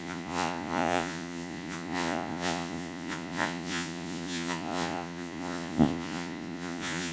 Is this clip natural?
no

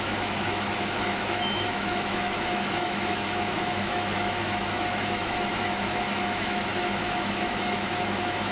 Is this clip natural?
no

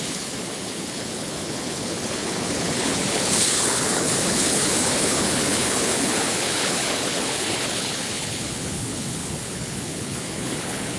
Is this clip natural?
no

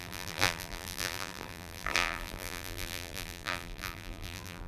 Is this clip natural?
no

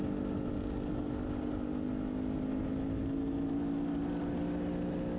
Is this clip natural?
yes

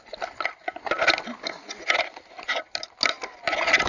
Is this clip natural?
yes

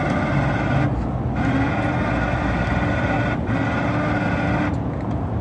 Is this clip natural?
yes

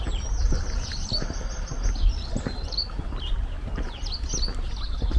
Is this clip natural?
yes